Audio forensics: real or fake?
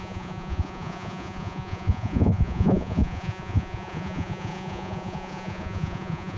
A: fake